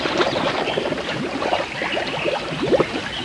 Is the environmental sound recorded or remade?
remade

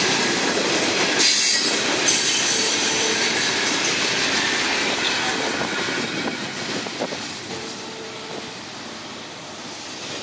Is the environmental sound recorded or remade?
remade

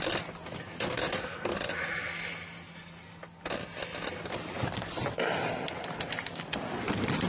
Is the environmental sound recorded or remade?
recorded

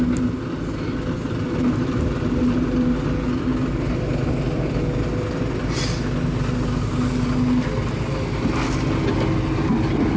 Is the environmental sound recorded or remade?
recorded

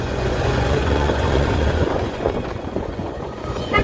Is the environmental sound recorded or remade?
remade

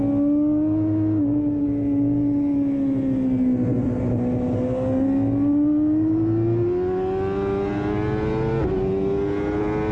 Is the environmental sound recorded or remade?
recorded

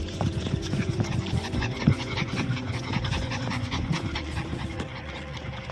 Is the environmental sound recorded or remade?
remade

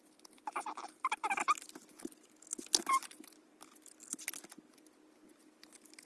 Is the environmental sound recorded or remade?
recorded